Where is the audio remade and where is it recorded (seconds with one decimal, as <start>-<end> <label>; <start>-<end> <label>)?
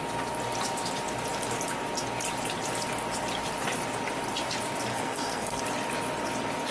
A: 0.0-4.9 recorded; 4.9-5.6 remade; 5.6-6.7 recorded